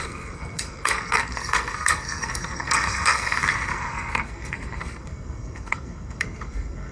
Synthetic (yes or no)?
yes